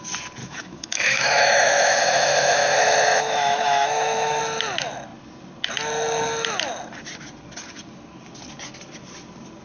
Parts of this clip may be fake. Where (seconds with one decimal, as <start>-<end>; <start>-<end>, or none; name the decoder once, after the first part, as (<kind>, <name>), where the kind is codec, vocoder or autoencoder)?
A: 0.4-4.4 (autoencoder, DAC-VAE)